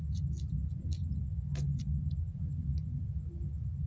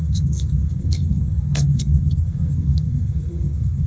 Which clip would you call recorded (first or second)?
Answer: first